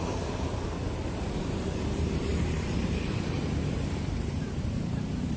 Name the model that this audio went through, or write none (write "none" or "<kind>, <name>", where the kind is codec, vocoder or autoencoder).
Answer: vocoder, BigVGAN v2